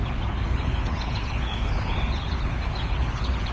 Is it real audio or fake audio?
fake